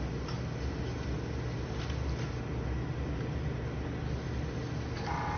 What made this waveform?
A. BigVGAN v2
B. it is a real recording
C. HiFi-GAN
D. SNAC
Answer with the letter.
B